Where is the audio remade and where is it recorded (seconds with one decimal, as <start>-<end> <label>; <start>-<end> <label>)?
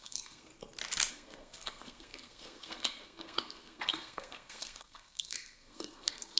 0.0-0.5 remade; 0.5-1.1 recorded; 1.1-6.4 remade